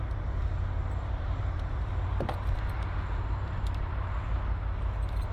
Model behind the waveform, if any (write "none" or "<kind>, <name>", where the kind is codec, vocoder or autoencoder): vocoder, BigVGAN v2